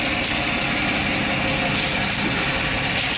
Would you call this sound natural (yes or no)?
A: yes